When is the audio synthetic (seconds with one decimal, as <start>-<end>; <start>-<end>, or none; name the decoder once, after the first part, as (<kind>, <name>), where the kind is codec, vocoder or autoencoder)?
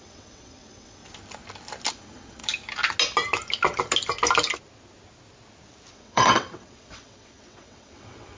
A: 0.0-1.0 (vocoder, WaveNeXt); 1.9-2.4; 5.9-8.4